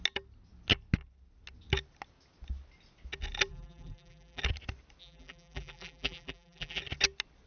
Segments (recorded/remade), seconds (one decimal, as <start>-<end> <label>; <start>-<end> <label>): 0.0-3.5 recorded; 3.5-4.4 remade; 4.4-5.0 recorded; 5.0-6.8 remade; 6.8-7.5 recorded